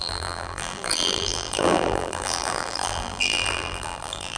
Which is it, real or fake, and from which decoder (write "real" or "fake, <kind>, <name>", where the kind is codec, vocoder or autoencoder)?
fake, vocoder, BigVGAN v2